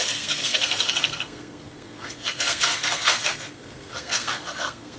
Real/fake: fake